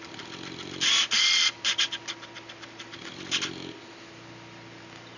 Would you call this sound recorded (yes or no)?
yes